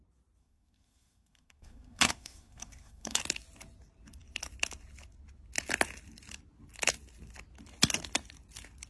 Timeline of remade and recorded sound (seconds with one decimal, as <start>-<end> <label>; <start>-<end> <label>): 0.0-0.4 recorded; 0.4-3.2 remade; 3.2-8.9 recorded